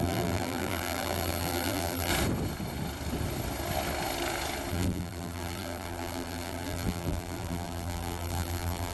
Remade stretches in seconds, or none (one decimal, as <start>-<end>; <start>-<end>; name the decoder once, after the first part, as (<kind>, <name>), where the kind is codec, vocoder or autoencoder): 0.0-2.1 (vocoder, BigVGAN v2); 4.7-8.9